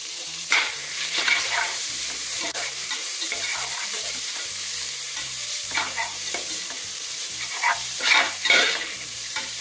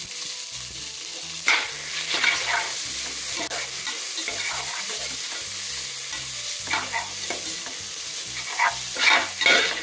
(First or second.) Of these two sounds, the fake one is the first